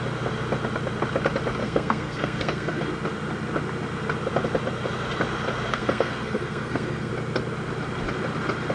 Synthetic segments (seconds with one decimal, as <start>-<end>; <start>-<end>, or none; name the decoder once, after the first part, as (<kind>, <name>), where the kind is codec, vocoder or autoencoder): 1.6-2.8 (codec, SNAC); 5.7-7.1